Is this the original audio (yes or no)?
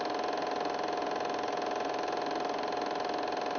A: yes